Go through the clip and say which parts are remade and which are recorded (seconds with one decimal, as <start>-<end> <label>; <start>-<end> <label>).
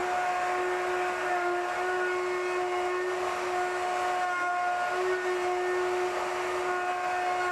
0.0-7.5 recorded